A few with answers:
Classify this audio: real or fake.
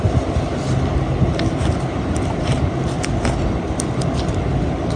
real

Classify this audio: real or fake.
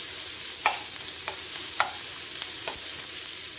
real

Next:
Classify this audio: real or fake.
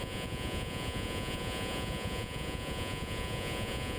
fake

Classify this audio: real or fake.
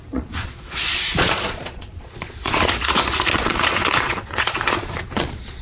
fake